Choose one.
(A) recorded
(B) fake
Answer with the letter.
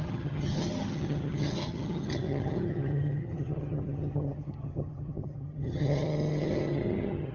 B